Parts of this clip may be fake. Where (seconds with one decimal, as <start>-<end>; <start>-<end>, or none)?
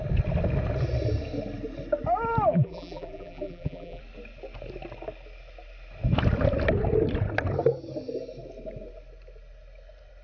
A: 2.5-4.0